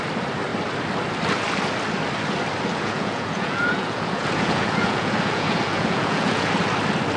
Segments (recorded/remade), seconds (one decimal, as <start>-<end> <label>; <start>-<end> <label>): 0.0-2.7 recorded; 2.7-6.5 remade; 6.5-7.2 recorded